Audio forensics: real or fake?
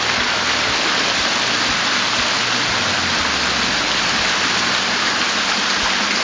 real